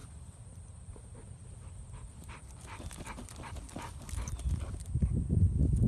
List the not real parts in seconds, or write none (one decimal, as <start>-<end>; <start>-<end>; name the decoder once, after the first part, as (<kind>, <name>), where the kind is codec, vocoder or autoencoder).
none